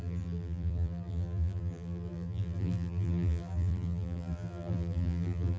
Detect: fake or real fake